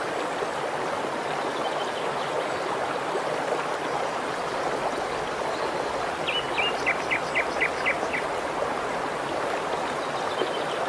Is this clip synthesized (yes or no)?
no